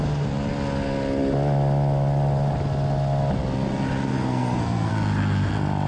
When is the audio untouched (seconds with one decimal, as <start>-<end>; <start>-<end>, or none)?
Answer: 0.0-4.1; 4.9-5.9